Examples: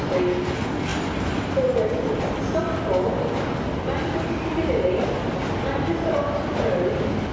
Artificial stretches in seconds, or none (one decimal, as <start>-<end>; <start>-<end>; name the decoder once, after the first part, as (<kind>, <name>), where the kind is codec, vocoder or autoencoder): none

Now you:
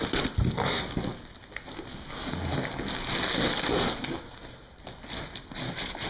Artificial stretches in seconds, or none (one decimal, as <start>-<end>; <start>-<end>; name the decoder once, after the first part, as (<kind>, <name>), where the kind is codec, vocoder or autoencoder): none

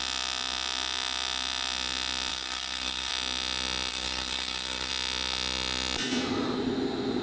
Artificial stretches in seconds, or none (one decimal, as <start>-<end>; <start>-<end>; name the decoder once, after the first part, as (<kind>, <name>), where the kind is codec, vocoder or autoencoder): 2.3-3.1 (codec, DAC); 3.9-4.9